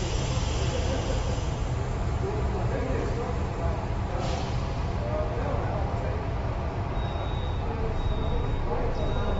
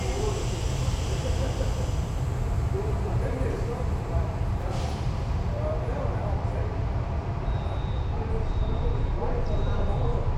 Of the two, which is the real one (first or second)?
first